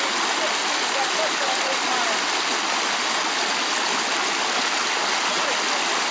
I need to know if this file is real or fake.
real